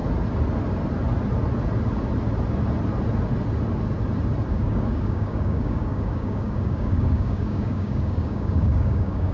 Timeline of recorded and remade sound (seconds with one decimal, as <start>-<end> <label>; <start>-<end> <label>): 0.0-4.5 recorded; 4.5-9.3 remade